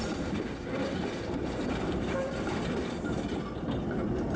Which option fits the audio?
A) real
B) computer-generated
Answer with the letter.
A